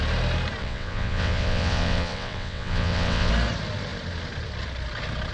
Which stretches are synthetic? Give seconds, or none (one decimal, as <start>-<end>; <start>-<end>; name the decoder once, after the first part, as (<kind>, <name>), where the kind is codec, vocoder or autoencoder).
0.6-3.3 (vocoder, WaveNeXt)

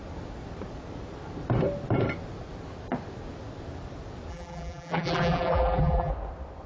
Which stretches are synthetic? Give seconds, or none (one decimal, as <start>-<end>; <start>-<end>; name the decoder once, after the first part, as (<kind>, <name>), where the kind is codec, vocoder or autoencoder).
4.3-6.1 (vocoder, BigVGAN v2)